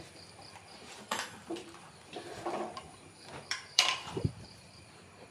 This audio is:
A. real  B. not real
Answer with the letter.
B